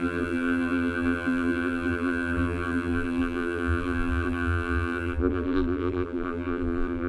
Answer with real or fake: fake